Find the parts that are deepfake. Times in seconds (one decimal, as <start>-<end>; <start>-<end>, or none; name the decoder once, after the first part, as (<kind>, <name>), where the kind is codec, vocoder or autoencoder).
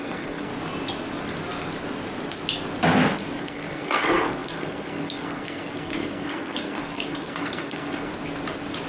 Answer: 0.0-0.5 (codec, SNAC); 3.4-8.1